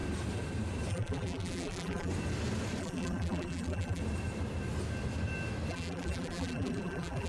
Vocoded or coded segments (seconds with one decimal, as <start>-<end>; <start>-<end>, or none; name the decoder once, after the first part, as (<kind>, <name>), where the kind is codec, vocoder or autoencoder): 0.9-2.1 (vocoder, BigVGAN v2); 2.8-4.0; 5.7-7.3